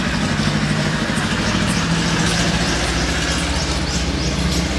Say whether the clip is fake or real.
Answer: real